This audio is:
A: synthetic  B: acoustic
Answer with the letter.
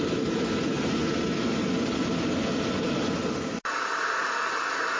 B